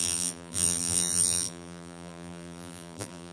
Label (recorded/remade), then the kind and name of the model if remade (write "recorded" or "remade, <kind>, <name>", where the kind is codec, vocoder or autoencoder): remade, vocoder, BigVGAN v2